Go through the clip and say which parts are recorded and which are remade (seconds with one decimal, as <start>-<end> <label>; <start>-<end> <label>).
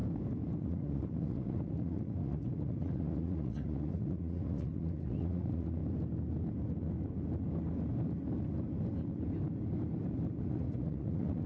0.0-0.6 recorded; 0.6-5.8 remade; 5.8-10.4 recorded; 10.4-11.5 remade